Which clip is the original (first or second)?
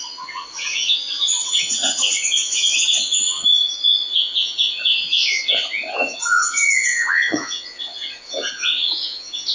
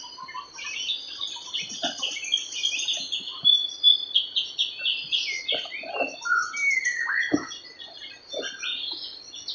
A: second